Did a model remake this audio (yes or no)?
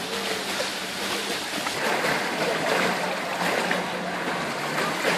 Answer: no